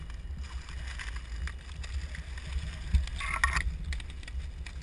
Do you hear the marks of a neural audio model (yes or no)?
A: no